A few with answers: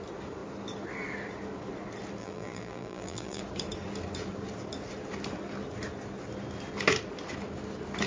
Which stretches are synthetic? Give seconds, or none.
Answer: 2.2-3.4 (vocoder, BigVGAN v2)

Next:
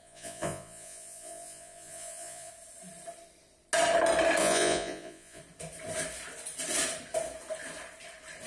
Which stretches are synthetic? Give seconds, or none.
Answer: 0.0-2.5 (vocoder, Vocos); 4.4-5.4

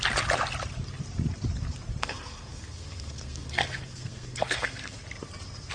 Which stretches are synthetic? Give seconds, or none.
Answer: 2.0-5.0 (codec, SNAC)

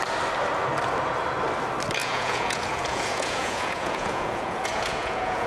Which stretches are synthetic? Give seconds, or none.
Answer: 2.0-5.5 (vocoder, Vocos)

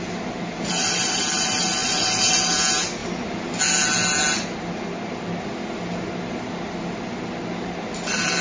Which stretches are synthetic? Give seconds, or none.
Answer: none

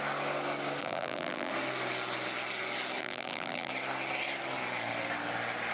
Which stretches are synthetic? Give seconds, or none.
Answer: 0.8-1.5 (vocoder, BigVGAN v2); 3.0-3.7

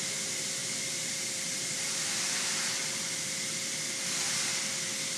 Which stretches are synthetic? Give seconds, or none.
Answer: 0.6-3.3 (vocoder, BigVGAN v2)